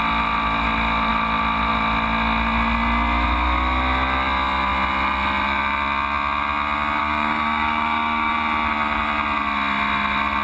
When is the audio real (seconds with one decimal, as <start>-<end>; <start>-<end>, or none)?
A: 0.0-7.0; 8.3-10.4